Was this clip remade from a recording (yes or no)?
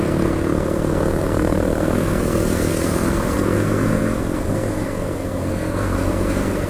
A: yes